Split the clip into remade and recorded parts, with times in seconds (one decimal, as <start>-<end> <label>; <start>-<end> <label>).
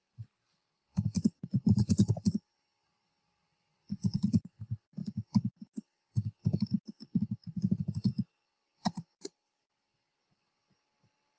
0.0-11.4 recorded